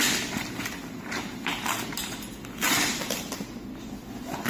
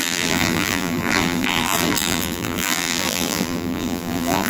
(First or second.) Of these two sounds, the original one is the first